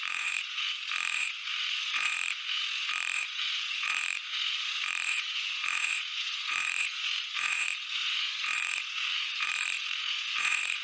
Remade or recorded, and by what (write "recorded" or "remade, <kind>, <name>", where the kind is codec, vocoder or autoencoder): remade, vocoder, Vocos